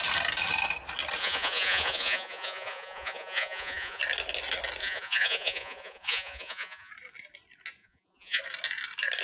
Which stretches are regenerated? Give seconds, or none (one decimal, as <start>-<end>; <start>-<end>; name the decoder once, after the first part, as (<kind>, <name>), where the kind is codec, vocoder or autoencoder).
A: 1.2-4.0 (vocoder, Vocos); 4.8-6.9; 7.8-8.4